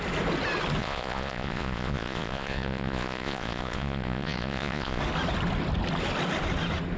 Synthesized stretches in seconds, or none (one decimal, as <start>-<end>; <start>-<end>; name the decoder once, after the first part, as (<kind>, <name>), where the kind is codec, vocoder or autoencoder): 0.8-5.0 (vocoder, Vocos)